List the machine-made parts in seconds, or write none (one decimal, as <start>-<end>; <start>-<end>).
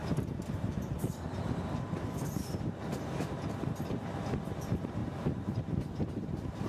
0.0-4.0; 5.0-6.7